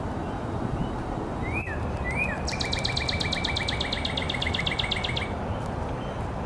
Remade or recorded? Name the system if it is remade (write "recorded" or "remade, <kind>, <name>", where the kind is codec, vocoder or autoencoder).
recorded